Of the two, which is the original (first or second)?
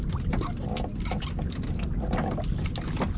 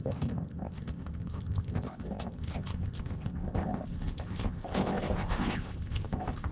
first